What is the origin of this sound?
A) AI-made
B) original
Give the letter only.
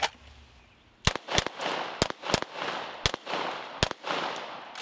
B